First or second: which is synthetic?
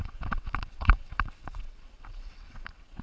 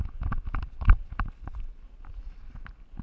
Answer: first